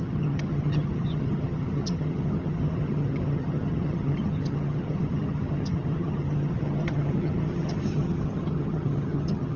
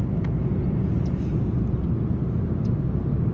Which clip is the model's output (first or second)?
first